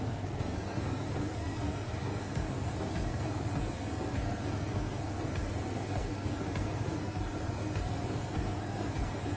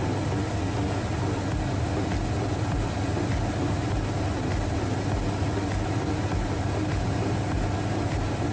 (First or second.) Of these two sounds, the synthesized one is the first